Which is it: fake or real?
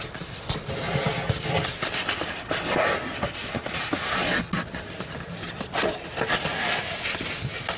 real